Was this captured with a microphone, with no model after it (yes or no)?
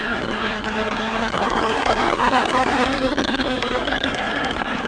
no